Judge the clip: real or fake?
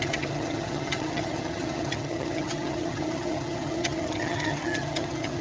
fake